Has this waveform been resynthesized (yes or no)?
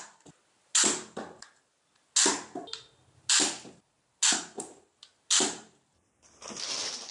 no